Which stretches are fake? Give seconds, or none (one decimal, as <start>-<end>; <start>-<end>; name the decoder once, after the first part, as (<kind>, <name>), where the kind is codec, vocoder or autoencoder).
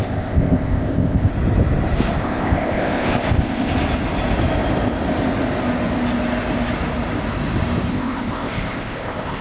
0.0-1.3 (codec, ZipCodec); 2.2-3.7; 7.9-9.4